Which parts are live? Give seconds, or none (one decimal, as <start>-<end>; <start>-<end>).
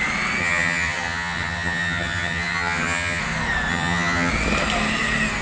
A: 0.0-0.4; 3.2-3.7; 4.3-5.4